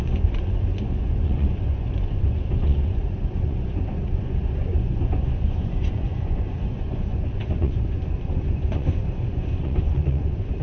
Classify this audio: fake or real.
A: fake